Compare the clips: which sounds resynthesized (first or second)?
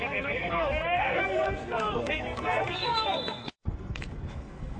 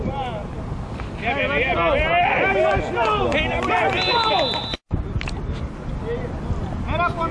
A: first